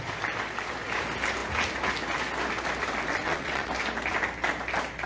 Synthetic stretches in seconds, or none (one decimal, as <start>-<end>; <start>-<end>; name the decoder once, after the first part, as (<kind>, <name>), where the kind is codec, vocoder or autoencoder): 3.2-3.7 (vocoder, WaveNeXt)